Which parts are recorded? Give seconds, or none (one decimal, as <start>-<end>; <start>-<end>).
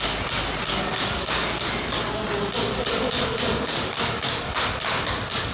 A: 0.0-0.7; 2.1-2.7; 4.7-5.5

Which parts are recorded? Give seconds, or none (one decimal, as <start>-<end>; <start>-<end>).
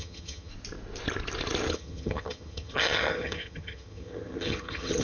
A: 0.5-1.7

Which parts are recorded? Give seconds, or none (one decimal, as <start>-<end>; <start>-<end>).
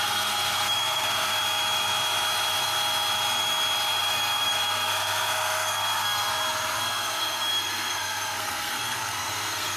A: 1.4-4.0; 6.3-6.8